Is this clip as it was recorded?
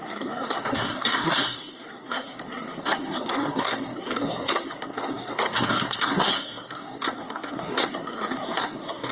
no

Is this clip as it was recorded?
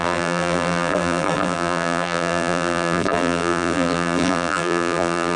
no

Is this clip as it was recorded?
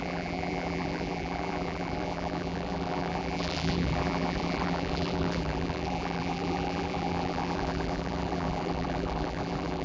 no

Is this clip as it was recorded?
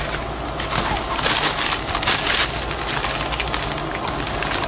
yes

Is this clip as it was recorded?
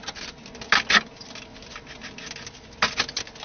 yes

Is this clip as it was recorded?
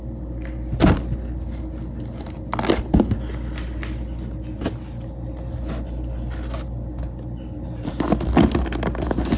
yes